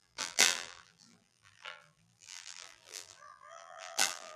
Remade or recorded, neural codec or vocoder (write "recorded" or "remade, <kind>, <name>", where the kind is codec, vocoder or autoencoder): remade, vocoder, BigVGAN v2